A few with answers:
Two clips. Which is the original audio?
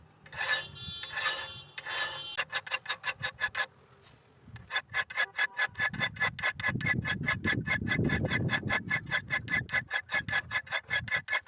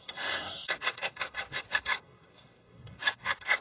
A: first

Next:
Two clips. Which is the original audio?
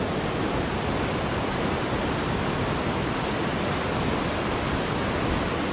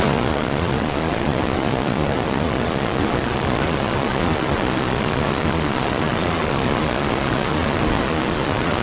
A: first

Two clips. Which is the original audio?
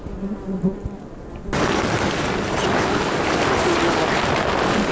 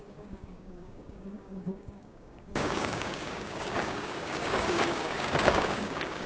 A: first